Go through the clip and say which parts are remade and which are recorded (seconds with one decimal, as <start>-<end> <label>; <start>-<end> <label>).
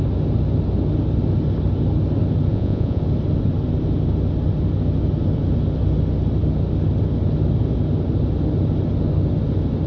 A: 0.0-2.5 recorded; 2.5-3.0 remade; 3.0-9.9 recorded